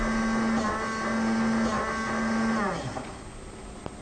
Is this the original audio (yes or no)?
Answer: yes